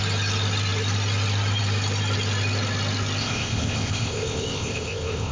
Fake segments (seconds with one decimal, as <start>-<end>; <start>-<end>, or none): 3.2-5.3